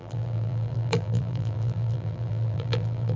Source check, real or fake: fake